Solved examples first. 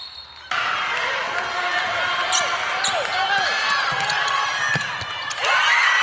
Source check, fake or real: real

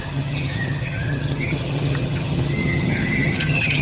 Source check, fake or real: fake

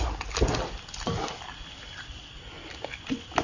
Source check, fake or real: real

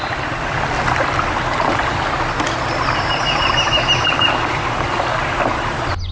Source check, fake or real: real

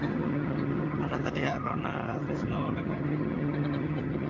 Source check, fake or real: fake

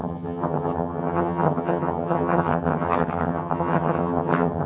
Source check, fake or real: fake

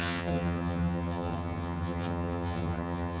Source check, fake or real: fake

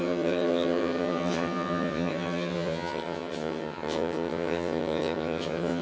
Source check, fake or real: fake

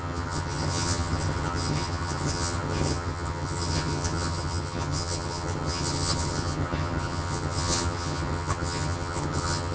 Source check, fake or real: fake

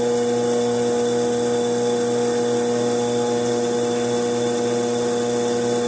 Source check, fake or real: real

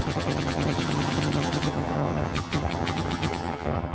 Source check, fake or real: fake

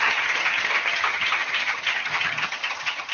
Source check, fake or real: fake